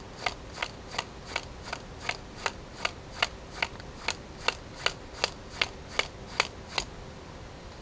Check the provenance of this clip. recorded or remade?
recorded